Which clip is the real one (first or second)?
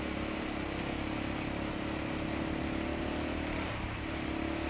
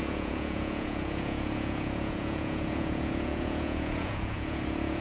first